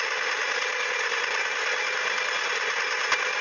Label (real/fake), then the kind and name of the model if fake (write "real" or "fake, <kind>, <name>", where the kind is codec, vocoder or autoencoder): real